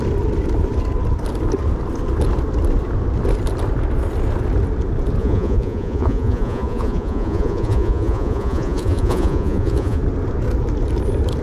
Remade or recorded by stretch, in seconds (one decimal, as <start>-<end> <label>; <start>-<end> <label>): 0.0-5.2 recorded; 5.2-10.0 remade; 10.0-11.4 recorded